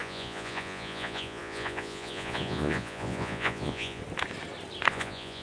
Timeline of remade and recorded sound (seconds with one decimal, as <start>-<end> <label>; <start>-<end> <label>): 0.0-4.0 remade; 4.0-4.9 recorded; 4.9-5.4 remade